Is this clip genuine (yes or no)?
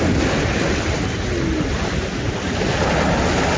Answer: yes